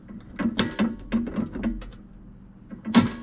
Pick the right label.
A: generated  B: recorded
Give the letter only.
B